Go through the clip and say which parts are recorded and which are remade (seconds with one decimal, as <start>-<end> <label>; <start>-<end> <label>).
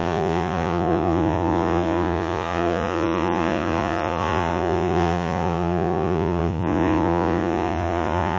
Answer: 0.0-8.4 remade